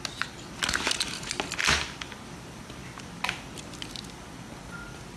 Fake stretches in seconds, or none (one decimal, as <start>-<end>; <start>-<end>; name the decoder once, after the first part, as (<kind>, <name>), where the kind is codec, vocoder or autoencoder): 1.6-3.0 (vocoder, BigVGAN v2)